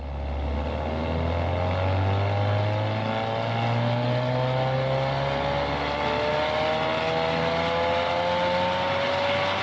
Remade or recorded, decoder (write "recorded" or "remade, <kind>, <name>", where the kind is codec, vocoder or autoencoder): recorded